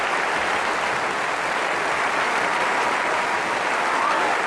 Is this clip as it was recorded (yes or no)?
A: yes